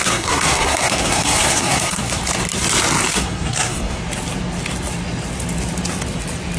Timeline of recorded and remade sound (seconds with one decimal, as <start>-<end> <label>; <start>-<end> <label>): 0.0-2.2 remade; 2.2-3.1 recorded; 3.1-4.0 remade; 4.0-6.6 recorded